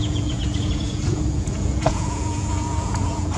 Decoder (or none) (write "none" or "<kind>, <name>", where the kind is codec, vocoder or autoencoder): vocoder, Vocos